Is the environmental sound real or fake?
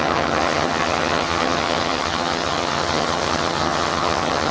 fake